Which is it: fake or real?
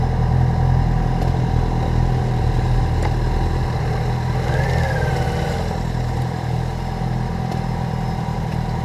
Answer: real